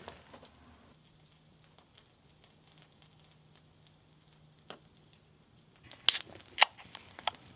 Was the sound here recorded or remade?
recorded